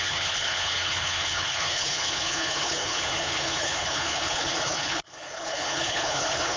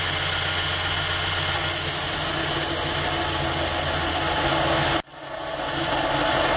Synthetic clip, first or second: first